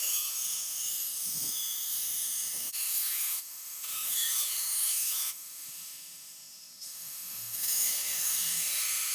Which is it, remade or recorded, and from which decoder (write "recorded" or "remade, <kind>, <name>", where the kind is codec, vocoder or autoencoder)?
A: remade, autoencoder, DAC-VAE